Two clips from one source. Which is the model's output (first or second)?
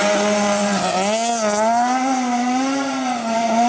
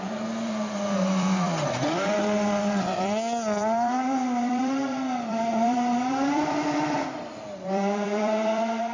second